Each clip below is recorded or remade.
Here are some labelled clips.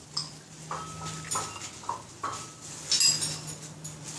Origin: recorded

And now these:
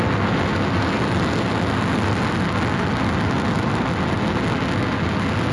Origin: recorded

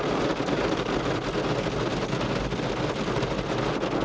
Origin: recorded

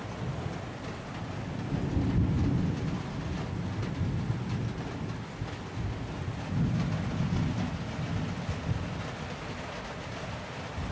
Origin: recorded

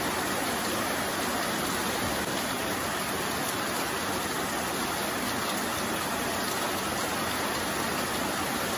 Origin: recorded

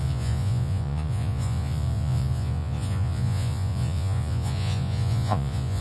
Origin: remade